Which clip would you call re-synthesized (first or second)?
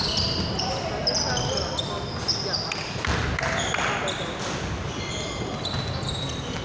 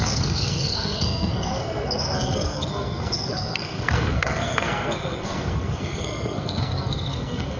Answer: second